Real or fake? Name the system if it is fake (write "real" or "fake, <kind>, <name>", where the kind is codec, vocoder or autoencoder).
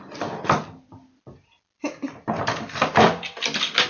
real